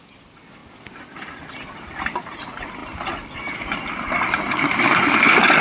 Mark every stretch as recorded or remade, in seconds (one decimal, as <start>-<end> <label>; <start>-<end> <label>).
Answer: 0.0-5.6 recorded